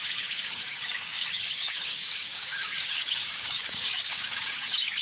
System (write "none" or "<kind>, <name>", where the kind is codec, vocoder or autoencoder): codec, DAC